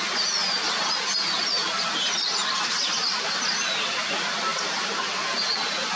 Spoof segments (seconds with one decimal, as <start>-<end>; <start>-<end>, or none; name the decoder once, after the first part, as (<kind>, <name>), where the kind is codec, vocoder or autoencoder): none